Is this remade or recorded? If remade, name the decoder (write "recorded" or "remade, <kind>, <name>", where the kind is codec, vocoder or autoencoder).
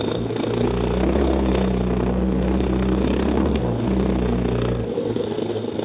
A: remade, codec, SNAC